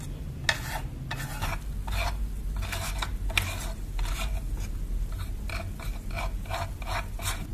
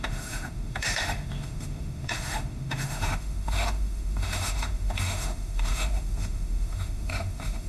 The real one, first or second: first